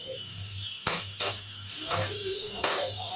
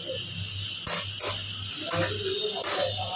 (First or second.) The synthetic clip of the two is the first